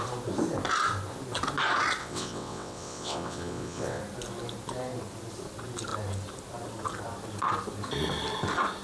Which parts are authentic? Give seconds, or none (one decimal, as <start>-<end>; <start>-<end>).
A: 0.0-2.0; 4.0-8.8